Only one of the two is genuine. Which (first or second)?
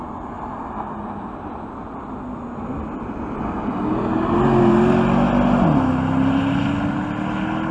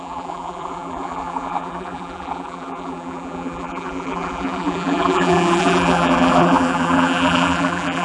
first